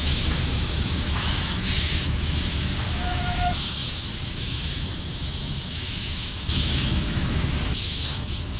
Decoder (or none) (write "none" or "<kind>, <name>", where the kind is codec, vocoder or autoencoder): autoencoder, DAC-VAE